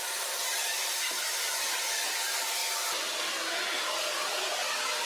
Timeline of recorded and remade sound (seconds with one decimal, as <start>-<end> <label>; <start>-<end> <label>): 0.0-2.6 remade; 2.6-4.1 recorded; 4.1-5.0 remade